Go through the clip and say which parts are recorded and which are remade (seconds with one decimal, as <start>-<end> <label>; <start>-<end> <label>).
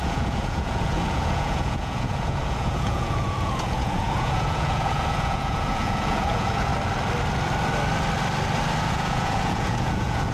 0.0-6.7 remade; 6.7-8.9 recorded; 8.9-10.3 remade